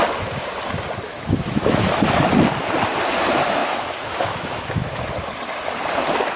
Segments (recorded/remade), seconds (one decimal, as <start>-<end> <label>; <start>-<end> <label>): 0.0-1.1 recorded; 1.1-1.9 remade; 1.9-3.6 recorded; 3.6-5.0 remade; 5.0-6.4 recorded